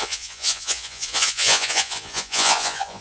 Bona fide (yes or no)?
no